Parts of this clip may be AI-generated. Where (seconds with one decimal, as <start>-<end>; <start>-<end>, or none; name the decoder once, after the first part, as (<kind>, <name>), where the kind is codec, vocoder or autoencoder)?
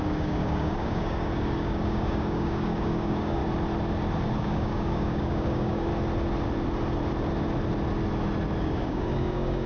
0.0-3.4 (codec, DAC); 4.4-5.9; 8.6-9.7